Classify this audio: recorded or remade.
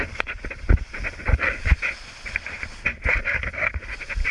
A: recorded